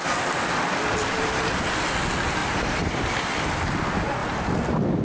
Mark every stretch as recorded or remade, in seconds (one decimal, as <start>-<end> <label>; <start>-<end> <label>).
0.0-1.0 recorded; 1.0-1.6 remade; 1.6-2.4 recorded; 2.4-3.1 remade; 3.1-5.0 recorded